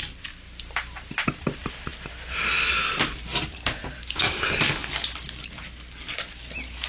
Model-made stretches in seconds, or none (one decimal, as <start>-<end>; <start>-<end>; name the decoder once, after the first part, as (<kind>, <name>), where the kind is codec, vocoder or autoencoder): none